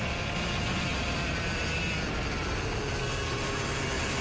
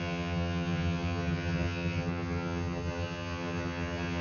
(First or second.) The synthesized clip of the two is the second